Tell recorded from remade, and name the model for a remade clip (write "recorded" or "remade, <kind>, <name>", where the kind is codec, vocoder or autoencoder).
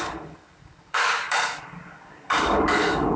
remade, codec, DAC